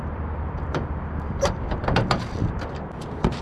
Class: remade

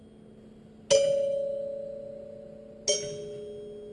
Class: recorded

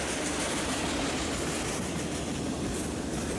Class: remade